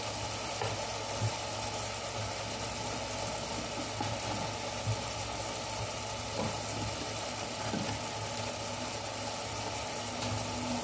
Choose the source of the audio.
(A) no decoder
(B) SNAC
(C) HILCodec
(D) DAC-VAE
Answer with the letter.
A